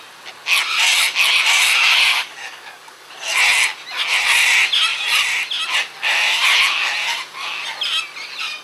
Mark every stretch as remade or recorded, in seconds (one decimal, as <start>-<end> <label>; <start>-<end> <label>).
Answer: 0.0-2.1 recorded; 2.1-3.1 remade; 3.1-8.6 recorded